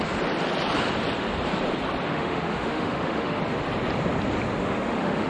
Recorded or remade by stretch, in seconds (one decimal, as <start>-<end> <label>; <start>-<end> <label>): 0.0-2.1 recorded; 2.1-3.4 remade; 3.4-4.6 recorded; 4.6-5.3 remade